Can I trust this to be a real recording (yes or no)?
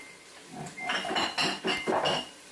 yes